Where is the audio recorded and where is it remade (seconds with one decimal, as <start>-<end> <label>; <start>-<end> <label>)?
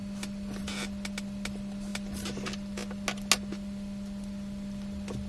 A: 0.0-5.3 recorded